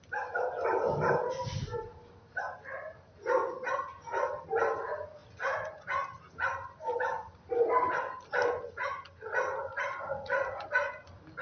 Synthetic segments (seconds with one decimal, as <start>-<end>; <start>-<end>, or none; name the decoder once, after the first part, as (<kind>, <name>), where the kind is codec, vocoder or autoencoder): none